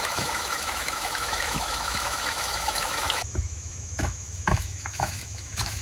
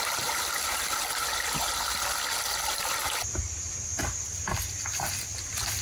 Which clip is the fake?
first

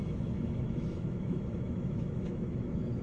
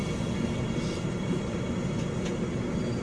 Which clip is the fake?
first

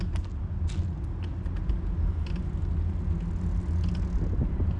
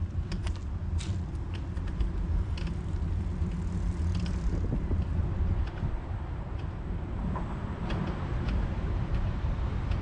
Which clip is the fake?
second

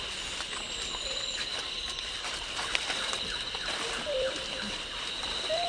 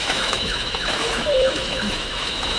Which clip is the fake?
second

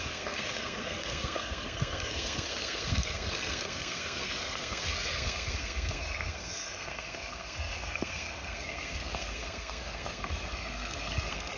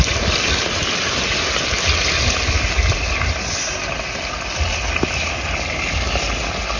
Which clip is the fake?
first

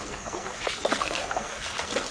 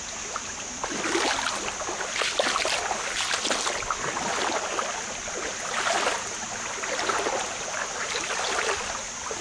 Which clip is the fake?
first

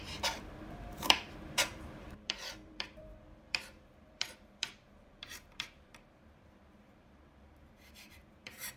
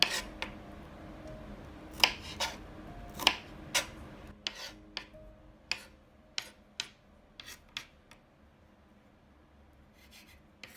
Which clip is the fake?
first